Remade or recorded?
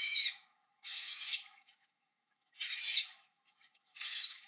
remade